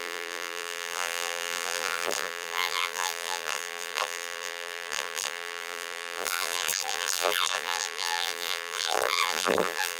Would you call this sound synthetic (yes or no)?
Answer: yes